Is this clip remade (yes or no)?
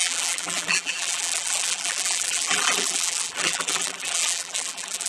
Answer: yes